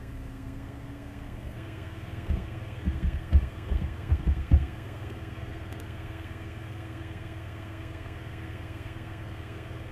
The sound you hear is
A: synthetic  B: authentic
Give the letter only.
A